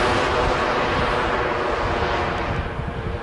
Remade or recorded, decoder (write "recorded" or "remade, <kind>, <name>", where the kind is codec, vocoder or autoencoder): recorded